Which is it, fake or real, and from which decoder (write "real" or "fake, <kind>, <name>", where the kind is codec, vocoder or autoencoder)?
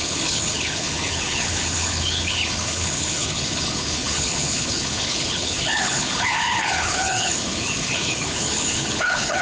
fake, codec, HILCodec